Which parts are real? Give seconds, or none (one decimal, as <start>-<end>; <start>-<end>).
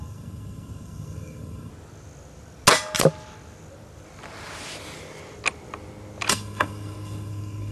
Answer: 1.7-6.3